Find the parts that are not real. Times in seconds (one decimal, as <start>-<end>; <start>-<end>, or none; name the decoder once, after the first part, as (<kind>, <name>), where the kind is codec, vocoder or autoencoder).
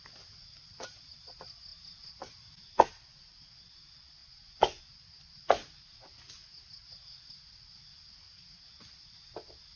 4.2-4.8 (vocoder, Vocos)